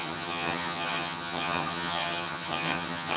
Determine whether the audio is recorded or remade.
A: remade